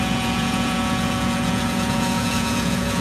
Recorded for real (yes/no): no